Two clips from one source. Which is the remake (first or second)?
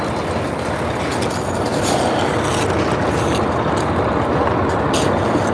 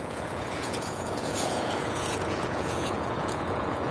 second